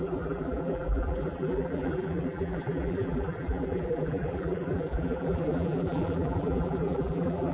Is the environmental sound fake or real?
fake